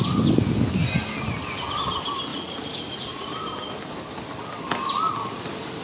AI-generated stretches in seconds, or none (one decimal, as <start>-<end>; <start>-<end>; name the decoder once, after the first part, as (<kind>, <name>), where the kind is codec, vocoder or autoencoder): 2.3-3.3 (vocoder, Vocos)